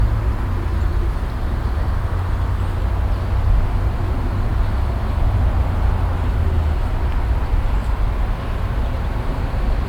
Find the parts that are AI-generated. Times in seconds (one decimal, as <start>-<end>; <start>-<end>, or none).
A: none